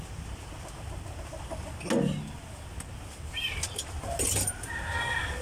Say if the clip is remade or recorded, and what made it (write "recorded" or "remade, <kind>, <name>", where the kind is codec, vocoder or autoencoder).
recorded